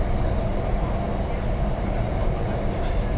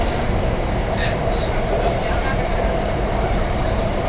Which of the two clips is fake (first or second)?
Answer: second